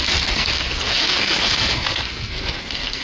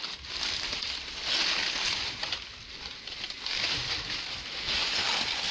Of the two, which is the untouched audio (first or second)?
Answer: second